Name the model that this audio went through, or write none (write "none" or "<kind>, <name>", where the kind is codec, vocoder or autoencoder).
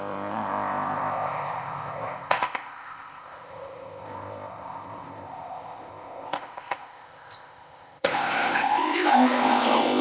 codec, ZipCodec